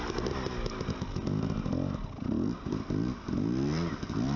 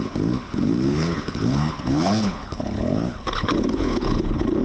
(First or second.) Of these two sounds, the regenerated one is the second